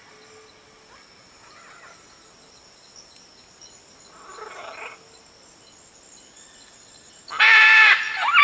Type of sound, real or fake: real